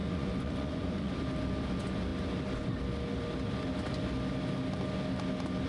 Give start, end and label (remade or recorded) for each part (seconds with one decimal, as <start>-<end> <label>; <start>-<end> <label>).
0.0-1.1 remade; 1.1-5.7 recorded